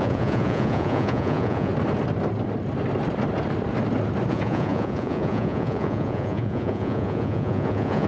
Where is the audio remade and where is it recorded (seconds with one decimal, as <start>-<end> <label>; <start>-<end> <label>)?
0.0-1.7 remade; 1.7-4.3 recorded; 4.3-8.1 remade